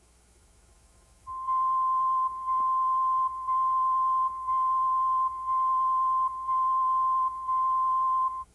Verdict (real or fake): fake